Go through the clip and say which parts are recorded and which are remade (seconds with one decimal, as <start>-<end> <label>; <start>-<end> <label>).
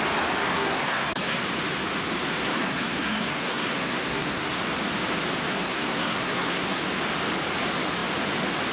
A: 0.0-0.4 recorded; 0.4-1.4 remade; 1.4-2.4 recorded; 2.4-4.6 remade; 4.6-5.5 recorded; 5.5-6.8 remade; 6.8-8.7 recorded